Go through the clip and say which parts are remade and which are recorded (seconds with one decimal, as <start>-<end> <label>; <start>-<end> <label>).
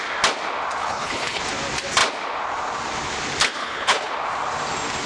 0.0-0.8 recorded; 0.8-1.4 remade; 1.4-3.6 recorded; 3.6-4.1 remade; 4.1-5.1 recorded